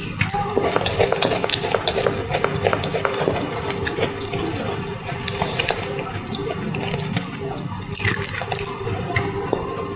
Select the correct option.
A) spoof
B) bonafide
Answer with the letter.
B